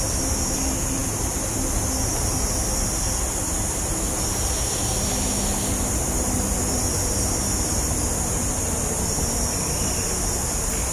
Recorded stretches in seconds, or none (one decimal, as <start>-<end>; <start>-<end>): 0.0-10.9